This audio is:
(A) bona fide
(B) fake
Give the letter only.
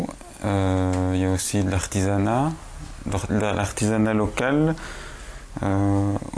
A